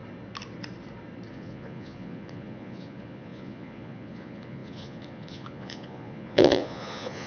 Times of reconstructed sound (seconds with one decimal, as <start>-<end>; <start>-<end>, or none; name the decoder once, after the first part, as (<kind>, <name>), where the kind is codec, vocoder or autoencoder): 1.3-7.3 (vocoder, Vocos)